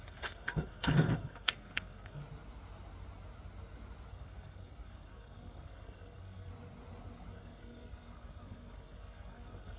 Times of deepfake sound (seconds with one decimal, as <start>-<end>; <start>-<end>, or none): 0.0-2.2; 4.1-6.5; 7.3-9.8